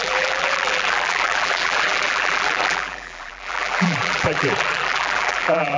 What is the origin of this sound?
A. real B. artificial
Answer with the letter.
B